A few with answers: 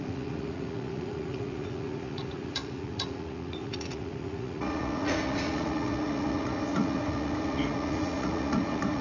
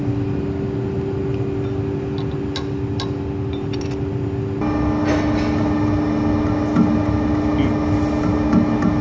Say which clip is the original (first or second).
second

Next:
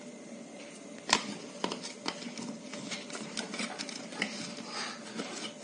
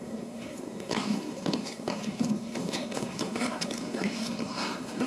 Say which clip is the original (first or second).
first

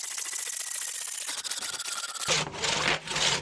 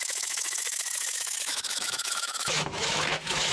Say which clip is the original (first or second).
first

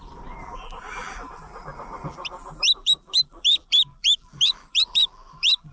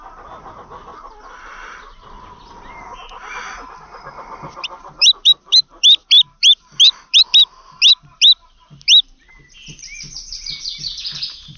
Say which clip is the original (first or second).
second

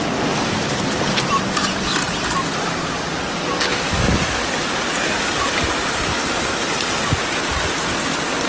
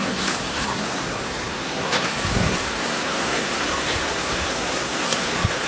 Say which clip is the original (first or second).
first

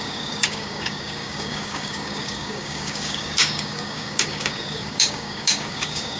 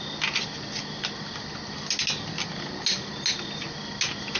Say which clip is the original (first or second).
second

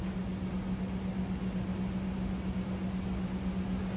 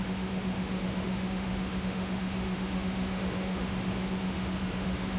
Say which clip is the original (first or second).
first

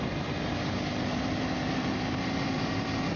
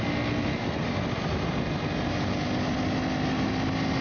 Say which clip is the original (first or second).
second